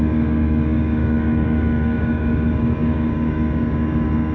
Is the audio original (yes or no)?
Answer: no